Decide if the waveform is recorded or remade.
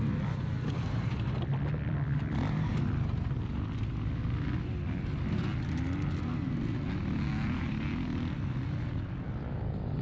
recorded